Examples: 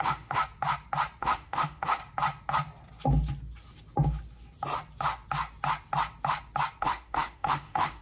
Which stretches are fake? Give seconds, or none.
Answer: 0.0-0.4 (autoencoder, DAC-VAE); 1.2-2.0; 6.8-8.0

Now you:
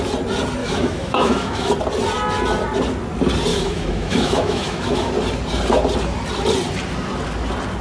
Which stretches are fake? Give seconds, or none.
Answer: 0.6-1.7 (autoencoder, DAC-VAE); 3.5-5.1